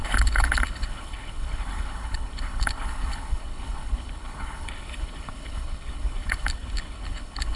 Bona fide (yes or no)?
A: no